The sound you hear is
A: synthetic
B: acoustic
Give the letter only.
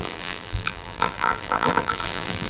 A